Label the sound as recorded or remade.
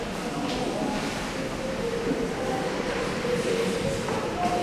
recorded